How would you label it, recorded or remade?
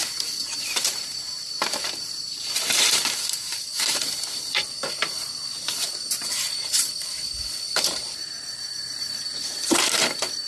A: remade